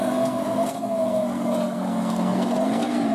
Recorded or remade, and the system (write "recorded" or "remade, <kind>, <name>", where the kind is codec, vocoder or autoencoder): remade, codec, SNAC